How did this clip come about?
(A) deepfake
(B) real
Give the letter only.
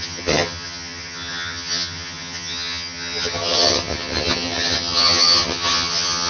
A